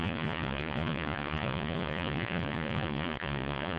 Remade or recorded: remade